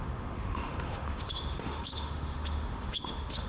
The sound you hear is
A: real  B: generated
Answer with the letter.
B